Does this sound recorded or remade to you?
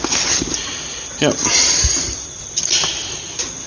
recorded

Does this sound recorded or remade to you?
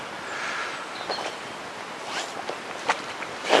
recorded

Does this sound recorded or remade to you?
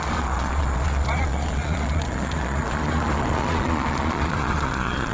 remade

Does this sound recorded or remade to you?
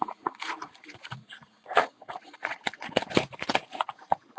remade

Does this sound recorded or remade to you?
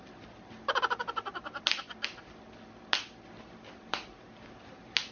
recorded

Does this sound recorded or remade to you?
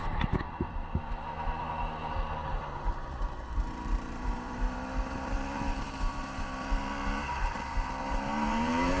remade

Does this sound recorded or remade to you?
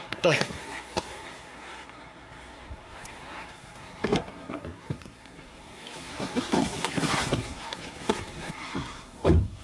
remade